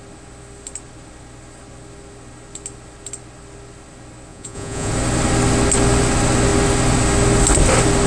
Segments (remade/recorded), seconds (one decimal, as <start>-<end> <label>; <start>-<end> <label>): 0.0-4.3 recorded; 4.3-4.9 remade; 4.9-8.1 recorded